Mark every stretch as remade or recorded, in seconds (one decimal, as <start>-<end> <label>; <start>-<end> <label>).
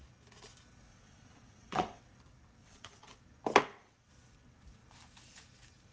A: 0.0-0.9 recorded; 0.9-2.0 remade; 2.0-2.6 recorded; 2.6-3.2 remade; 3.2-3.6 recorded; 3.6-4.1 remade; 4.1-5.9 recorded